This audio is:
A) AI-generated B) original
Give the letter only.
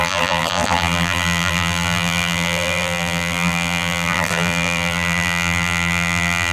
A